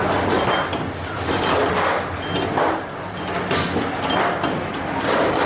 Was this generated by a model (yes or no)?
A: no